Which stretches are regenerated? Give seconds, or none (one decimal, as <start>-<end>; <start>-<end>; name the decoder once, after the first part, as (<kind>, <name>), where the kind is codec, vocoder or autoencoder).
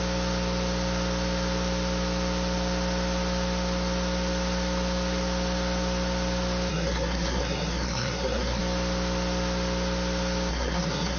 6.7-8.6 (codec, SNAC); 10.5-11.2